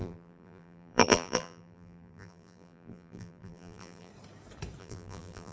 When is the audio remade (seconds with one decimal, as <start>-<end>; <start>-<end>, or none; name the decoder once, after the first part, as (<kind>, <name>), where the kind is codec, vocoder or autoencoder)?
0.0-4.1 (vocoder, BigVGAN v2); 4.8-5.5